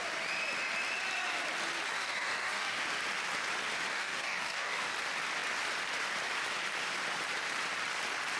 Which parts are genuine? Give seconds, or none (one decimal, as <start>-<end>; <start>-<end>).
0.0-2.0; 2.7-3.9; 4.9-8.4